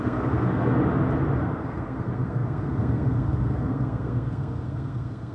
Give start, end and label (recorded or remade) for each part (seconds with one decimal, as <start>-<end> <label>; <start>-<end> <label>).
0.0-0.8 remade; 0.8-1.4 recorded; 1.4-5.3 remade